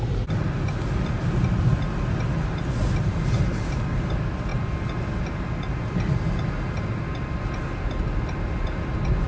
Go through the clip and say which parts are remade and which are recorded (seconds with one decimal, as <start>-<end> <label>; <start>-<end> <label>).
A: 0.0-9.3 recorded